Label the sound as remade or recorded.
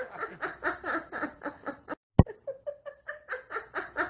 recorded